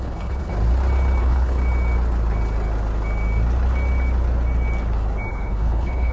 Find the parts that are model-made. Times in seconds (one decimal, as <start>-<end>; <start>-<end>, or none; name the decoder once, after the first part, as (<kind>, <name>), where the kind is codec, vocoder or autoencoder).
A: 0.0-0.5 (codec, HILCodec); 1.2-1.6; 5.3-6.1